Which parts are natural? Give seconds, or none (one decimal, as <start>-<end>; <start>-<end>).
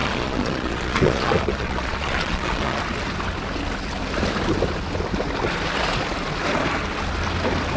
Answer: 2.8-7.8